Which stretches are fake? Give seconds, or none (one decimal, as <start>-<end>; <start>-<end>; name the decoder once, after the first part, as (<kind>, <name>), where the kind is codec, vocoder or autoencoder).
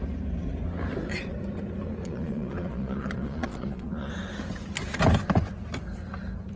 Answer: 2.0-4.1 (vocoder, Vocos)